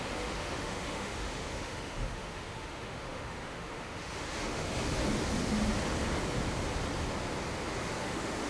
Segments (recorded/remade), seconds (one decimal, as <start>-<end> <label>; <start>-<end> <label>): 0.0-5.0 remade; 5.0-8.0 recorded; 8.0-8.5 remade